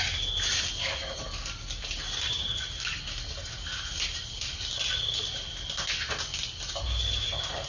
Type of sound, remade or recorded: recorded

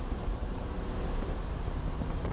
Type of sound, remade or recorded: remade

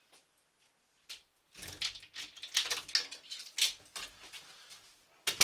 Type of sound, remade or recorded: recorded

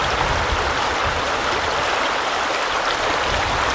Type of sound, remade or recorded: remade